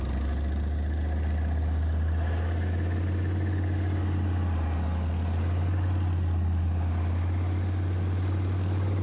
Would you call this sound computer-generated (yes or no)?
no